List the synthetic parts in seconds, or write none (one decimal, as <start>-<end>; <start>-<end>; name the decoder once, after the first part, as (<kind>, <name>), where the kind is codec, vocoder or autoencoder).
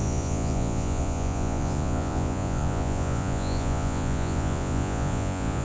0.0-5.6 (vocoder, Vocos)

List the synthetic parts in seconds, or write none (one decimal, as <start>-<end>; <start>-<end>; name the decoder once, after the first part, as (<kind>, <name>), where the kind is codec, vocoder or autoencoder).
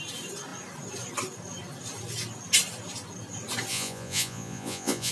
3.7-5.1 (vocoder, Vocos)